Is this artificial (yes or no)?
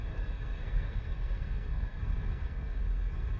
yes